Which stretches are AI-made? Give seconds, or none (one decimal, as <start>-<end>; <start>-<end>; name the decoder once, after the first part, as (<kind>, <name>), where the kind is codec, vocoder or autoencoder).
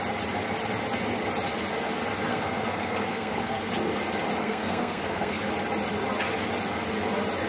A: 2.3-3.7 (codec, SNAC); 4.4-5.5